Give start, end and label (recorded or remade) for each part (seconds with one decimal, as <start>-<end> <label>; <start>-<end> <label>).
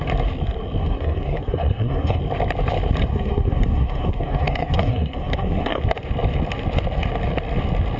0.0-0.8 recorded; 0.8-2.2 remade; 2.2-3.1 recorded; 3.1-5.8 remade; 5.8-8.0 recorded